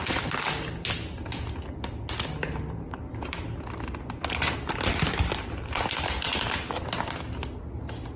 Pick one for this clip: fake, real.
real